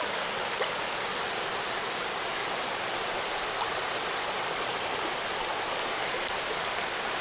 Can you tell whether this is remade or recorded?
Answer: recorded